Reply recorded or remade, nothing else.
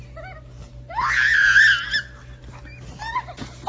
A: recorded